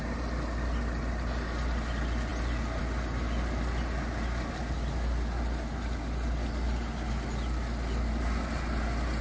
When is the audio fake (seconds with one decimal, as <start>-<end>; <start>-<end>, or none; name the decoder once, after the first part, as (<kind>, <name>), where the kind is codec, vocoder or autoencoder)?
none